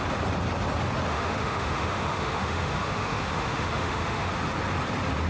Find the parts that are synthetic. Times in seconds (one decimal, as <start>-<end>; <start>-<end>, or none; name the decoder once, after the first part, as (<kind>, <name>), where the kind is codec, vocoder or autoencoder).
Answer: 1.1-4.3 (autoencoder, DAC-VAE)